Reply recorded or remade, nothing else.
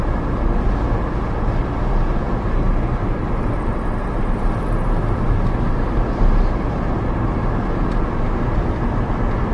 recorded